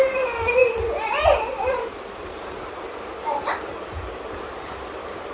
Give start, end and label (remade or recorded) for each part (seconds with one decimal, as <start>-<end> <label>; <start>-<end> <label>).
0.0-5.3 recorded